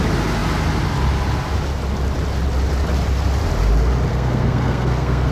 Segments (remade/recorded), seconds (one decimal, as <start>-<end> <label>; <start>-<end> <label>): 0.0-4.1 recorded; 4.1-5.3 remade